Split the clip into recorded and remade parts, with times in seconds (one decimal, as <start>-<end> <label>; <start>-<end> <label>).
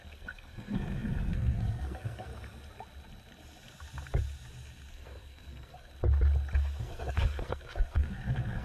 0.0-2.3 remade; 2.3-4.9 recorded; 4.9-5.9 remade; 5.9-6.8 recorded; 6.8-8.6 remade